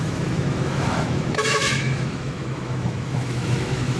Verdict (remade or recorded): remade